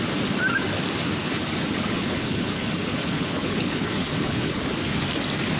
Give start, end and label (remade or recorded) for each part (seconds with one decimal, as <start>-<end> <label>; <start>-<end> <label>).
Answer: 0.0-1.2 recorded; 1.2-4.6 remade; 4.6-5.6 recorded